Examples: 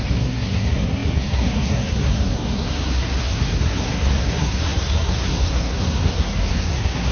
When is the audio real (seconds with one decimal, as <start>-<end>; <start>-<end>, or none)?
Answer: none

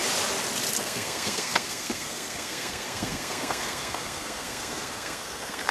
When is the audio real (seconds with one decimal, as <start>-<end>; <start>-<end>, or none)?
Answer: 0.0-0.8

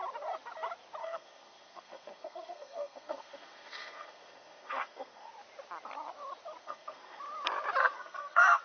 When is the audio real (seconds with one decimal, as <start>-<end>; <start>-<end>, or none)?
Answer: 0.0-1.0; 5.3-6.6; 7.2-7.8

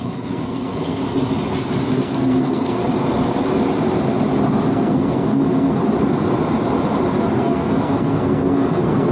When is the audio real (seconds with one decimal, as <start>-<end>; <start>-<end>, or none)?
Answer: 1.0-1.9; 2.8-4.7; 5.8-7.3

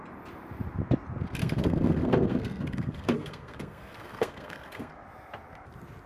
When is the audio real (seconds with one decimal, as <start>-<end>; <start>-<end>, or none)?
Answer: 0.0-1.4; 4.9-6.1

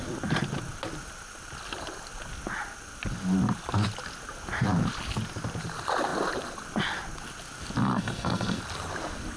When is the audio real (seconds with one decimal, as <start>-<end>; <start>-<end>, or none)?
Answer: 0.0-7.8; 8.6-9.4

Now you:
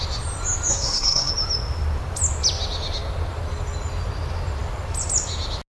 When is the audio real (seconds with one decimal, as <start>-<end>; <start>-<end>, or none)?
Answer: 0.0-0.7; 1.3-5.7